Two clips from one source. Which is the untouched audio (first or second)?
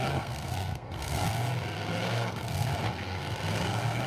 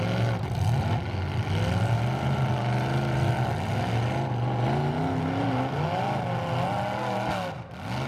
second